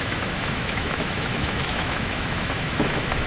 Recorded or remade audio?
remade